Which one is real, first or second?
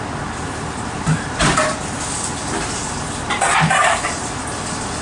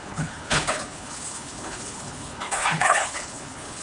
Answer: first